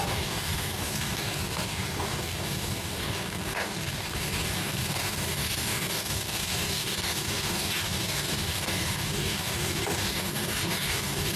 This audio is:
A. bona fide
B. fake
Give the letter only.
B